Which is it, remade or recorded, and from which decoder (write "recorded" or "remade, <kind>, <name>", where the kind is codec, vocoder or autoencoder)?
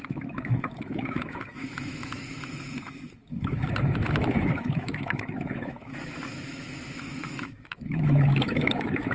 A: remade, autoencoder, DAC-VAE